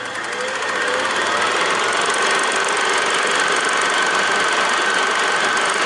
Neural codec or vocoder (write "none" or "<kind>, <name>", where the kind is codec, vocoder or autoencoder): none